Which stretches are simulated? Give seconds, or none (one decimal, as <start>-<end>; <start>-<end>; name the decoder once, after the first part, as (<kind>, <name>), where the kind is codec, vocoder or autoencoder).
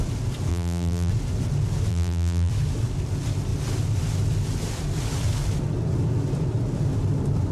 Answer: 0.5-1.1 (vocoder, BigVGAN v2); 1.9-2.5